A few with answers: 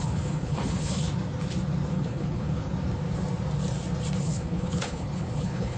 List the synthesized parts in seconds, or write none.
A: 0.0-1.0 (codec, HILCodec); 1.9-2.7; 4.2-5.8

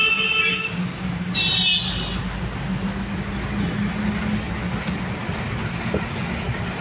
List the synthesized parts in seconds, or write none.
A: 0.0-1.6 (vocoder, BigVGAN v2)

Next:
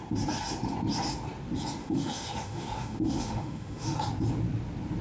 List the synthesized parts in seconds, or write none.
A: 1.8-4.0 (autoencoder, DAC-VAE)

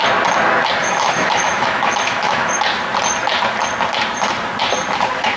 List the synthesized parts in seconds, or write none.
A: 0.8-2.5 (autoencoder, DAC-VAE)

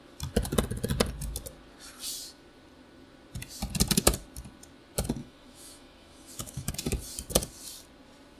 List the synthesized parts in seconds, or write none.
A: 5.2-6.7 (autoencoder, DAC-VAE)

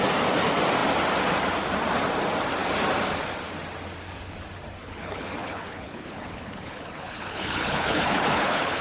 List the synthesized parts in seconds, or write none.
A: 4.8-8.8 (codec, HILCodec)

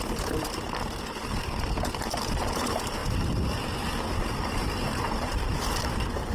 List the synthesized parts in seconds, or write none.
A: 0.0-6.3 (vocoder, BigVGAN v2)